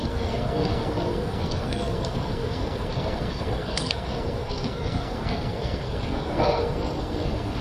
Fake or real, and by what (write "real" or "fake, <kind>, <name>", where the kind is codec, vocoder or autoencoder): fake, codec, SNAC